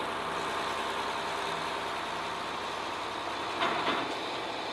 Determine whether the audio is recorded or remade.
recorded